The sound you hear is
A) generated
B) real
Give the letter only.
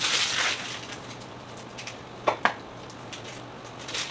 B